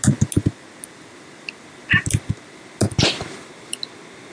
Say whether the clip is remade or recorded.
recorded